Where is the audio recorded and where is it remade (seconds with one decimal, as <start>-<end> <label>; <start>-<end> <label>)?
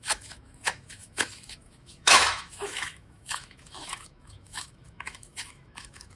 0.0-6.2 remade